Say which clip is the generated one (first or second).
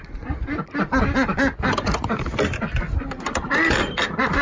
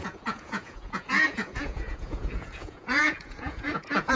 second